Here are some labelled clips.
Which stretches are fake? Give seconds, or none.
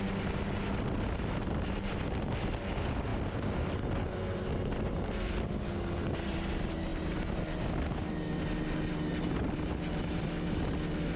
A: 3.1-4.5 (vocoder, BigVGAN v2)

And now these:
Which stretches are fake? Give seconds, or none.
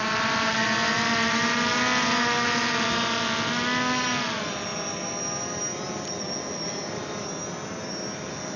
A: none